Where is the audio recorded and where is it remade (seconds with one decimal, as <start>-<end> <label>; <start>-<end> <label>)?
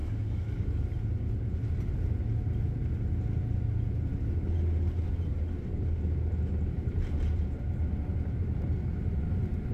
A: 0.0-0.8 remade; 0.8-9.7 recorded